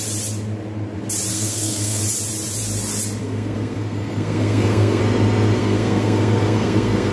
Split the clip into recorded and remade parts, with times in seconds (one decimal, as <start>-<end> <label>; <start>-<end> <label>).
0.0-1.3 recorded; 1.3-2.0 remade; 2.0-3.2 recorded; 3.2-5.0 remade; 5.0-5.6 recorded; 5.6-7.1 remade

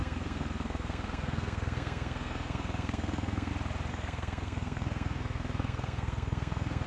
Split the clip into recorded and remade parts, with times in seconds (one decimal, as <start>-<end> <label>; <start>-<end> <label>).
0.0-3.5 remade; 3.5-3.9 recorded; 3.9-6.9 remade

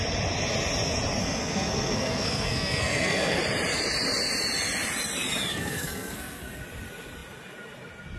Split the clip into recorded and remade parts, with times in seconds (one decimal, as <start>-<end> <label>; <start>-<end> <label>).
0.0-1.2 recorded; 1.2-3.4 remade; 3.4-5.5 recorded; 5.5-6.6 remade; 6.6-8.2 recorded

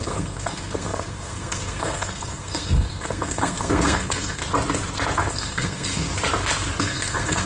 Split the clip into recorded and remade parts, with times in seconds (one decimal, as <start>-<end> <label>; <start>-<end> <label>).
0.0-4.4 remade; 4.4-5.3 recorded; 5.3-6.1 remade; 6.1-6.8 recorded; 6.8-7.5 remade